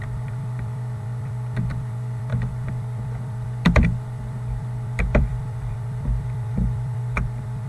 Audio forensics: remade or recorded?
remade